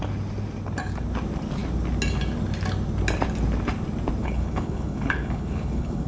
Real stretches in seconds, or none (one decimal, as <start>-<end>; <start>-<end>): 0.0-4.2